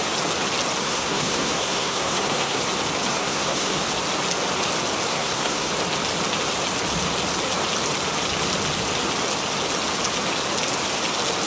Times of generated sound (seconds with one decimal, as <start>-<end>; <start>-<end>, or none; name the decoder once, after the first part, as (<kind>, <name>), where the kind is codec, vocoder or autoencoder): 0.8-2.6 (codec, SNAC); 3.1-3.8; 5.1-5.7